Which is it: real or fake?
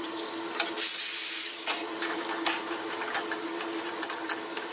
real